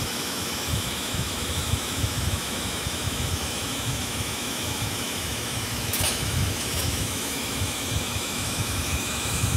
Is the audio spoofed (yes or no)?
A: yes